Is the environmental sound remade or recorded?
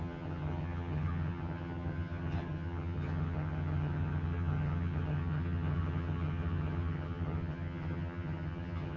remade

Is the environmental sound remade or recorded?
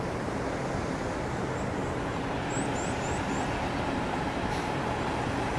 remade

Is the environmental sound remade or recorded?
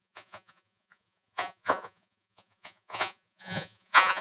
remade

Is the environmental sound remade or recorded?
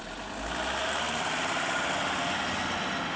recorded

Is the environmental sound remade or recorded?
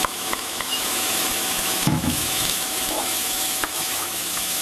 remade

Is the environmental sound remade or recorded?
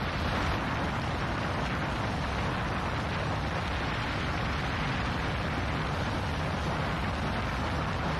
recorded